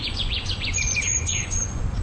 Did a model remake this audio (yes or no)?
yes